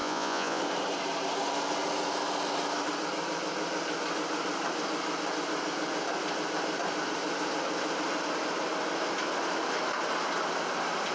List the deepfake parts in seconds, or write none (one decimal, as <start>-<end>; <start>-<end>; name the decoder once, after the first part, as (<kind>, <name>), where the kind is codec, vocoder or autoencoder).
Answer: 0.0-0.6 (vocoder, Vocos)